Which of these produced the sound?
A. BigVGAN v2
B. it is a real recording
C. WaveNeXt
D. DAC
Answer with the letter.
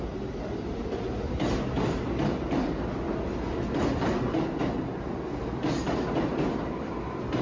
B